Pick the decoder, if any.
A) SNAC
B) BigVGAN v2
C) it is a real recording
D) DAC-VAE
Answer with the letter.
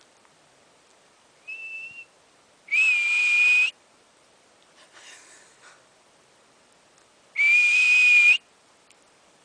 C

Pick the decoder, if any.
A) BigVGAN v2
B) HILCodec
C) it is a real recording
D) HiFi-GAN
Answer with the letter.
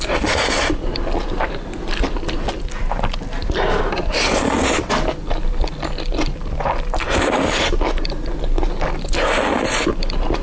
C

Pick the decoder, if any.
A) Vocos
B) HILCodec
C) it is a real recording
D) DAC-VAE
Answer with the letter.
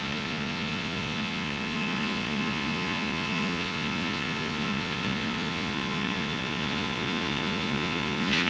A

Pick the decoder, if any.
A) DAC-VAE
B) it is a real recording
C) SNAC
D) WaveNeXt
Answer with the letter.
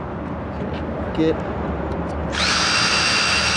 B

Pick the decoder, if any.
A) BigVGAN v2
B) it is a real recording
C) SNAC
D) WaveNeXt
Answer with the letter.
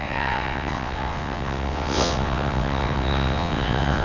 D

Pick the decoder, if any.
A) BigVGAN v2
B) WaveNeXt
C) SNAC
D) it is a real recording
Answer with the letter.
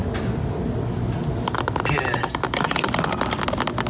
D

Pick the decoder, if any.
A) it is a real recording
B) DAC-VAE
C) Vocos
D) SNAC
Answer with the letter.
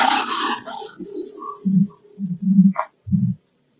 A